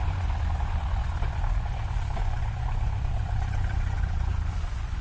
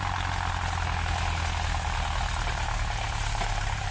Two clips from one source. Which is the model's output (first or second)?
first